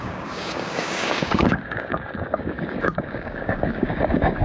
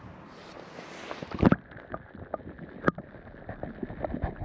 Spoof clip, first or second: first